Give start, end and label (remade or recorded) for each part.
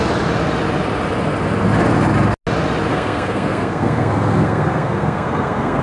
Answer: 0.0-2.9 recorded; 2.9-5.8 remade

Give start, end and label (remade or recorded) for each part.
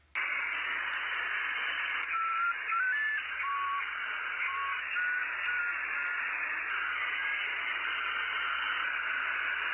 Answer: 0.0-9.7 recorded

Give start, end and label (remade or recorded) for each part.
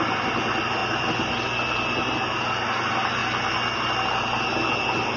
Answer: 0.0-5.2 recorded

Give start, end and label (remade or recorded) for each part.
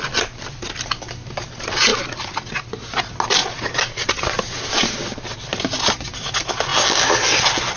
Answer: 0.0-7.8 recorded